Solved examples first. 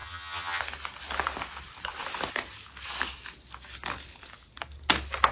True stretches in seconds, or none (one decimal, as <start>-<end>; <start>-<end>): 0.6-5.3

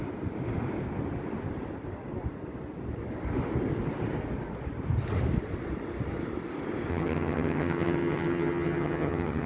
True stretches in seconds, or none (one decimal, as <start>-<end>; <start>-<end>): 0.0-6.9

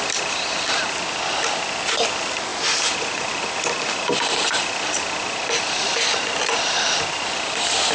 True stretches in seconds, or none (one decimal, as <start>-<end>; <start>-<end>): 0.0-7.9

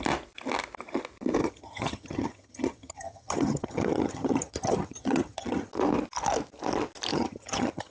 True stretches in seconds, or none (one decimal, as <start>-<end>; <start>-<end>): 0.0-1.4; 5.7-7.1